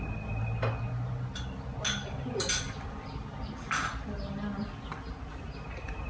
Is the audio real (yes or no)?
yes